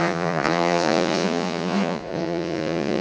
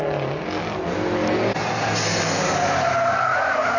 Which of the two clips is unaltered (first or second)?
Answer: second